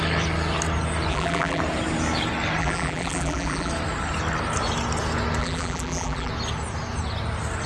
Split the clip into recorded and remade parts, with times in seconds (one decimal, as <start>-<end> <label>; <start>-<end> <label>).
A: 0.0-1.1 recorded; 1.1-1.6 remade; 1.6-2.6 recorded; 2.6-3.7 remade; 3.7-5.4 recorded; 5.4-6.3 remade; 6.3-7.7 recorded